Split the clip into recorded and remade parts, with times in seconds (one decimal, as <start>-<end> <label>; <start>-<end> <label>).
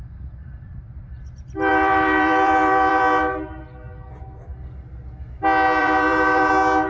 0.0-1.7 recorded; 1.7-3.6 remade; 3.6-5.8 recorded; 5.8-6.5 remade; 6.5-6.9 recorded